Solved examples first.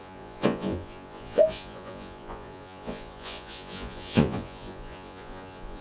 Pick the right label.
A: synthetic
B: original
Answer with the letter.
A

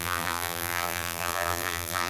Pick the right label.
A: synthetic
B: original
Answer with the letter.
A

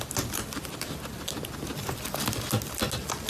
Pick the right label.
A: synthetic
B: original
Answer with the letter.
B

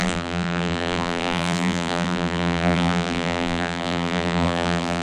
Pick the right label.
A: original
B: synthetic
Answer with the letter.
B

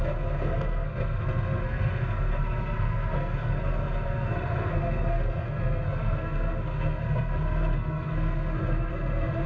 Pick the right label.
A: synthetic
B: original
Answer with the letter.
A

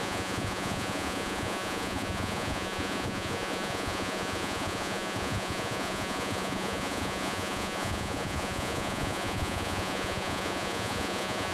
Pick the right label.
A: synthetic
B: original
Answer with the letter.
A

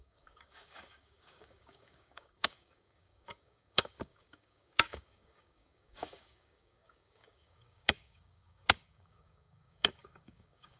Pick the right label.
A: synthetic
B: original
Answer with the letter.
A